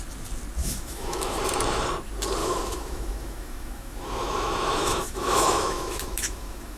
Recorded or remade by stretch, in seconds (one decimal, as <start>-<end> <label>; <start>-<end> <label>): 0.0-0.6 recorded; 0.6-1.4 remade; 1.4-2.4 recorded; 2.4-6.8 remade